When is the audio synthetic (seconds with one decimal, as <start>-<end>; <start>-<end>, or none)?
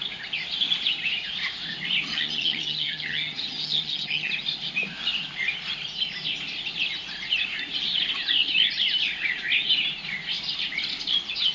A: 2.1-4.3